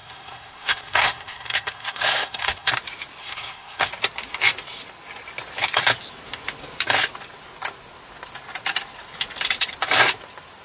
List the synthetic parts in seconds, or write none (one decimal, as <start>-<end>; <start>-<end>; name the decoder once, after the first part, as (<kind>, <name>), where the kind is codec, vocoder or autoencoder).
0.0-2.7 (codec, SNAC); 3.2-3.9